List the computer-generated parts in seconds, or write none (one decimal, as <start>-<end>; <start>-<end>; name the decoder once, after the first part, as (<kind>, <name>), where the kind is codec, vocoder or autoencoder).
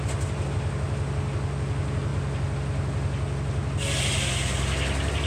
none